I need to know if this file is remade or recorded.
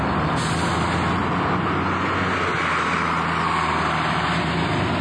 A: recorded